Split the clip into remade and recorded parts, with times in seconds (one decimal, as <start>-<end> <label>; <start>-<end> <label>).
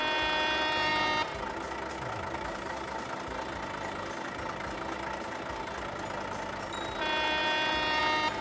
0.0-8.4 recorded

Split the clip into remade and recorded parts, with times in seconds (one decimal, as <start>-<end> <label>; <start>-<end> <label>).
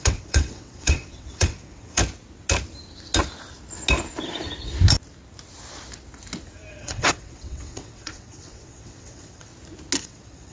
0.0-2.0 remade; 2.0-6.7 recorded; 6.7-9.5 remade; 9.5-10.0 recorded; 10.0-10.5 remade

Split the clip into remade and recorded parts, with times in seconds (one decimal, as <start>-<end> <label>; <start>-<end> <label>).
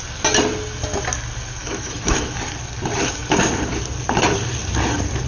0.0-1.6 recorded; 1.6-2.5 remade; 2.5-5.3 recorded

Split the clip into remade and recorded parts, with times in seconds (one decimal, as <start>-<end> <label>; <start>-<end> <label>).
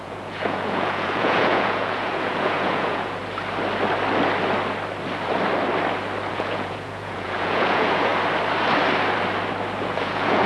0.0-3.2 remade; 3.2-6.3 recorded; 6.3-8.1 remade; 8.1-9.8 recorded; 9.8-10.5 remade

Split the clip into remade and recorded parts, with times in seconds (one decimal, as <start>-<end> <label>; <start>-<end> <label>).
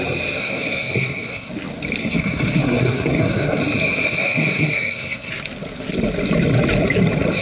0.0-0.4 recorded; 0.4-1.5 remade; 1.5-2.0 recorded; 2.0-3.6 remade; 3.6-4.2 recorded; 4.2-5.3 remade; 5.3-7.4 recorded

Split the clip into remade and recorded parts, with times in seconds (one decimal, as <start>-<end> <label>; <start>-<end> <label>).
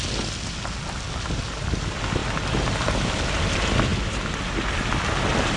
0.0-5.6 recorded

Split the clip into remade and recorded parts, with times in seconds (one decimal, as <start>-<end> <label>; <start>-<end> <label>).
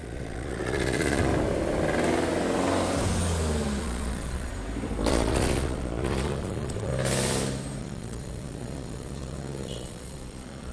0.0-1.3 remade; 1.3-3.8 recorded; 3.8-4.5 remade; 4.5-5.1 recorded; 5.1-6.9 remade; 6.9-7.8 recorded; 7.8-10.7 remade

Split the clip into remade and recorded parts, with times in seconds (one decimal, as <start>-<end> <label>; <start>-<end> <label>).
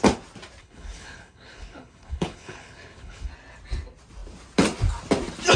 0.0-0.6 recorded; 0.6-3.3 remade; 3.3-5.6 recorded